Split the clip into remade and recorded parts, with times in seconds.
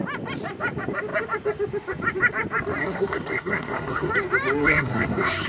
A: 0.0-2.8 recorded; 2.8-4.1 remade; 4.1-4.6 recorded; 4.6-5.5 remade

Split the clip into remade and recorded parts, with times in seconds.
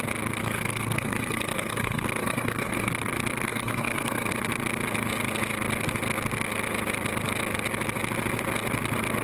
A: 0.0-0.4 recorded; 0.4-2.9 remade; 2.9-3.5 recorded; 3.5-4.3 remade; 4.3-9.2 recorded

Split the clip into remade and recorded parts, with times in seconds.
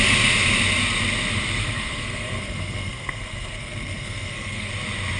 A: 0.0-1.6 recorded; 1.6-4.7 remade; 4.7-5.2 recorded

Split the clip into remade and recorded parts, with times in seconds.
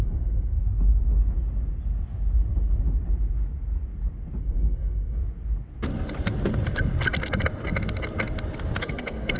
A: 0.0-0.6 remade; 0.6-4.4 recorded; 4.4-5.2 remade; 5.2-8.8 recorded; 8.8-9.4 remade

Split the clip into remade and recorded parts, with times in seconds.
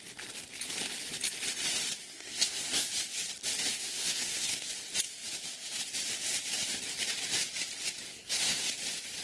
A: 0.0-2.0 recorded; 2.0-2.9 remade; 2.9-3.7 recorded; 3.7-4.7 remade; 4.7-8.1 recorded; 8.1-8.7 remade; 8.7-9.2 recorded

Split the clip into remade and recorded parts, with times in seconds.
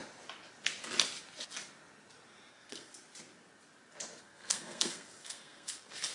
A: 0.0-2.5 recorded; 2.5-2.9 remade; 2.9-4.2 recorded; 4.2-6.1 remade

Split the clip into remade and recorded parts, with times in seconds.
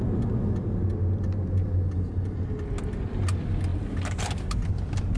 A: 0.0-5.2 recorded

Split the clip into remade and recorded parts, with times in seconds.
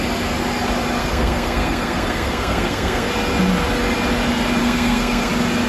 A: 0.0-1.0 recorded; 1.0-3.1 remade; 3.1-4.6 recorded; 4.6-5.3 remade; 5.3-5.7 recorded